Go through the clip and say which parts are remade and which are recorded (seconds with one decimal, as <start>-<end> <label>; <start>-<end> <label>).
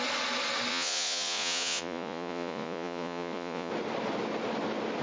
0.0-0.7 recorded; 0.7-3.7 remade; 3.7-5.0 recorded